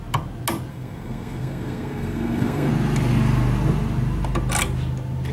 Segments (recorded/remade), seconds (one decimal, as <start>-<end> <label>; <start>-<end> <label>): 0.0-0.7 recorded; 0.7-2.7 remade; 2.7-5.3 recorded